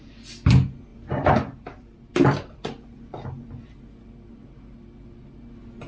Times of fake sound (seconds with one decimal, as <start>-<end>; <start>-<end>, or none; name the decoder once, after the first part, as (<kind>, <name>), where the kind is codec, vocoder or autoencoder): 0.9-3.7 (vocoder, BigVGAN v2)